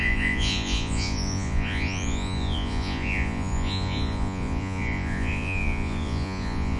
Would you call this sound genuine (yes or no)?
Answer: no